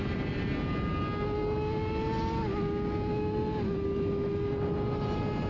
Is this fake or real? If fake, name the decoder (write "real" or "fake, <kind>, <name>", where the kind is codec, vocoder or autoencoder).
real